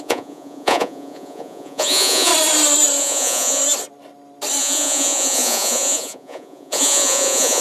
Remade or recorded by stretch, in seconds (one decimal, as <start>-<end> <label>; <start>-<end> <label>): 0.0-2.3 remade; 2.3-3.0 recorded; 3.0-3.6 remade; 3.6-4.6 recorded; 4.6-7.6 remade